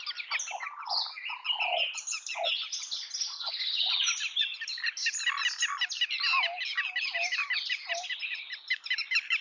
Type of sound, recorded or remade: recorded